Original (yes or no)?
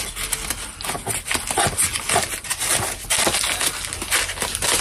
yes